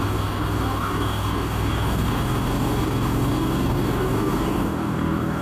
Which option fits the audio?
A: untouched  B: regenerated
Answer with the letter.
B